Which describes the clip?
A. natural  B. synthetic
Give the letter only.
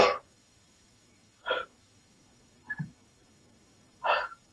B